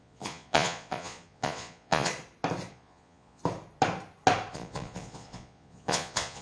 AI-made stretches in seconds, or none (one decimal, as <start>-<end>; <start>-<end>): 0.0-2.1; 2.7-3.4; 4.5-6.4